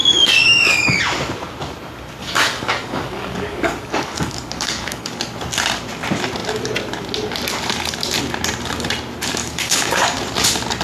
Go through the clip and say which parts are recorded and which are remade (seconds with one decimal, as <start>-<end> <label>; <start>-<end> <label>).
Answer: 0.0-1.0 remade; 1.0-2.2 recorded; 2.2-5.2 remade; 5.2-9.4 recorded; 9.4-10.2 remade; 10.2-10.8 recorded

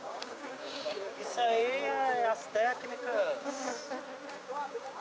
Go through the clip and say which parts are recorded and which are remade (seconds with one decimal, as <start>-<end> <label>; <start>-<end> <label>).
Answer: 0.0-1.6 remade; 1.6-2.5 recorded; 2.5-3.7 remade; 3.7-4.3 recorded; 4.3-5.0 remade

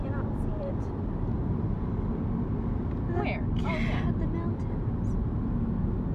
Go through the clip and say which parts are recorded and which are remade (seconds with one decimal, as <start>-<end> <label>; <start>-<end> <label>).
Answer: 0.0-6.1 recorded

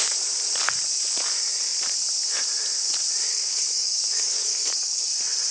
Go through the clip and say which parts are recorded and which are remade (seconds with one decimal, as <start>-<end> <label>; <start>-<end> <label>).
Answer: 0.0-3.3 recorded; 3.3-5.1 remade; 5.1-5.5 recorded

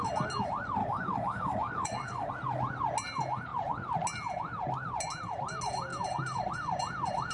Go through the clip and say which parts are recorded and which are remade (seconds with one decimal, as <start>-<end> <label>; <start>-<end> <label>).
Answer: 0.0-0.8 recorded; 0.8-2.3 remade; 2.3-7.3 recorded

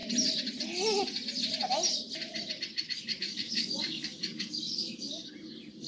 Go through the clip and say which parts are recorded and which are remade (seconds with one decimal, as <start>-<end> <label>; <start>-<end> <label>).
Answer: 0.0-3.1 recorded; 3.1-5.3 remade; 5.3-5.9 recorded